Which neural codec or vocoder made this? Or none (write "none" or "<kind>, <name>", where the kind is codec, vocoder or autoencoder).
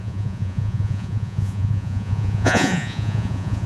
vocoder, Vocos